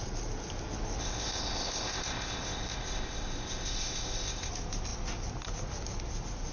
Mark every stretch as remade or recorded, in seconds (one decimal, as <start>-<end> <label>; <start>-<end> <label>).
0.0-1.0 recorded; 1.0-4.5 remade; 4.5-6.5 recorded